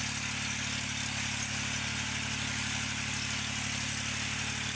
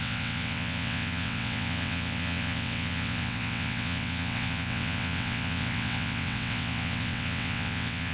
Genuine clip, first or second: first